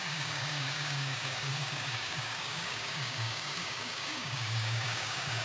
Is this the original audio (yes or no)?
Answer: no